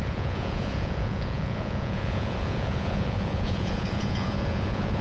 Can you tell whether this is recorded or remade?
remade